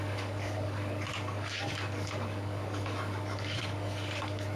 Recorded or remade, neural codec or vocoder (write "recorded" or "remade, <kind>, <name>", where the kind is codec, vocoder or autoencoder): remade, codec, DAC